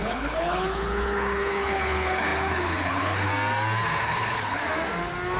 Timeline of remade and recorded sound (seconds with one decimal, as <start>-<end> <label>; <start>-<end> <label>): 0.0-3.3 remade; 3.3-4.0 recorded; 4.0-4.6 remade; 4.6-5.4 recorded